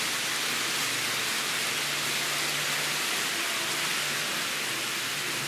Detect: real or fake real